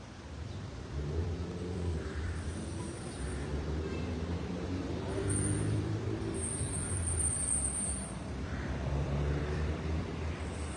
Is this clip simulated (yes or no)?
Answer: yes